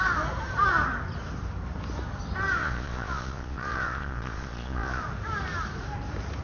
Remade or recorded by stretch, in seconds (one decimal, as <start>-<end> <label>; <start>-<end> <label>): 0.0-2.6 recorded; 2.6-5.0 remade; 5.0-6.4 recorded